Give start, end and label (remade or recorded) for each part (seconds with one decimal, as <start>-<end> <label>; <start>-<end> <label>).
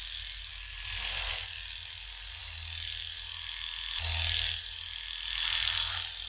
0.0-6.3 recorded